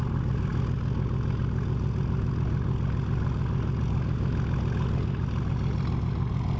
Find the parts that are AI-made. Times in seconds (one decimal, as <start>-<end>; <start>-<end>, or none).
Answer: none